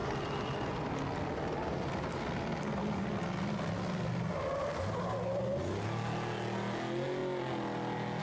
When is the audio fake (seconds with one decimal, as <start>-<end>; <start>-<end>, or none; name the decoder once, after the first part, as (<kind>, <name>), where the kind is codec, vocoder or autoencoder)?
none